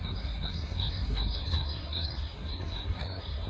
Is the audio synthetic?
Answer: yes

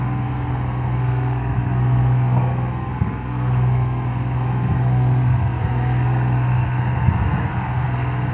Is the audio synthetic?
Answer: yes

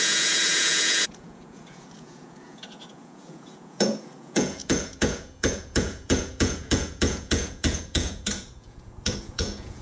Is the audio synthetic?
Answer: yes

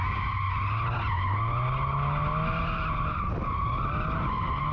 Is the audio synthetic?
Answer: no